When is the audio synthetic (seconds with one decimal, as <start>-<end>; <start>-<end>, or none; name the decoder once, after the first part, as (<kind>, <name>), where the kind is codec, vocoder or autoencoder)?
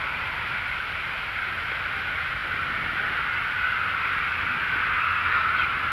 none